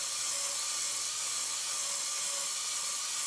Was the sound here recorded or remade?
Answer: recorded